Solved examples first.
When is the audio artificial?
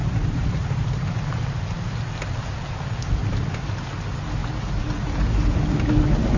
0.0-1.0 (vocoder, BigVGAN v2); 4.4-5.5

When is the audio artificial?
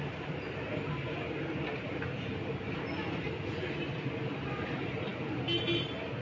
none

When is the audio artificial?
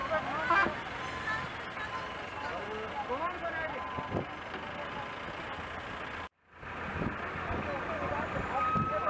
none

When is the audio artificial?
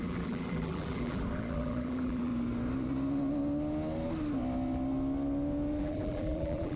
0.0-2.3 (vocoder, BigVGAN v2); 5.8-6.8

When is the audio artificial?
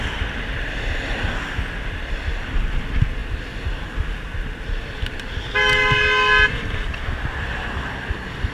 0.0-3.2 (vocoder, BigVGAN v2)